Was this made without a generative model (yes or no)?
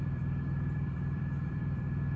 no